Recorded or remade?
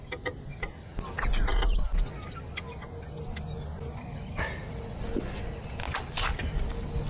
recorded